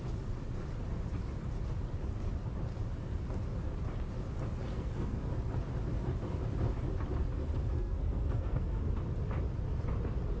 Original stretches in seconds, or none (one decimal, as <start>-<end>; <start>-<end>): 0.0-4.7; 5.3-7.6; 8.9-10.4